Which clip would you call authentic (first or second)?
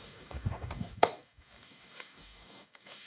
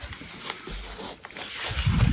second